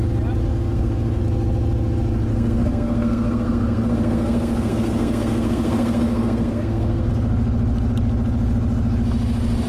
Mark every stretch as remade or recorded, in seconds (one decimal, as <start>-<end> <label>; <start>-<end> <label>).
0.0-0.5 recorded; 0.5-1.2 remade; 1.2-2.3 recorded; 2.3-7.1 remade; 7.1-9.7 recorded